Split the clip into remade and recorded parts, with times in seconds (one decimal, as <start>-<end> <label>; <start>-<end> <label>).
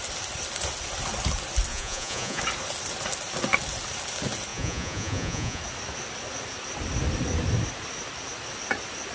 0.0-1.7 recorded; 1.7-2.4 remade; 2.4-4.5 recorded; 4.5-5.6 remade; 5.6-9.1 recorded